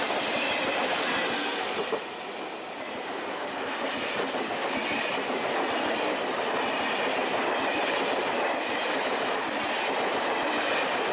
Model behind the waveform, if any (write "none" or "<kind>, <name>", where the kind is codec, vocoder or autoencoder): none